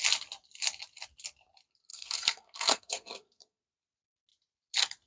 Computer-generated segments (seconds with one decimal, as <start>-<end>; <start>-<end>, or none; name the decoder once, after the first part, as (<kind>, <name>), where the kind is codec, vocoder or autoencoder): 1.9-3.6 (codec, SNAC)